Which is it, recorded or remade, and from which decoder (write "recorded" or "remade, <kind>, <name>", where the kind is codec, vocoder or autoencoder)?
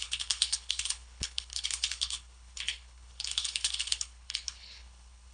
remade, codec, HILCodec